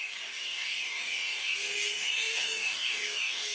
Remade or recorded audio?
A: remade